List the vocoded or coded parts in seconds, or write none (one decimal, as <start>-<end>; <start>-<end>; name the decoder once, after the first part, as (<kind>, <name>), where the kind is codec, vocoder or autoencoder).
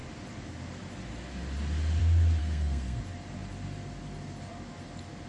2.4-3.0 (codec, SNAC)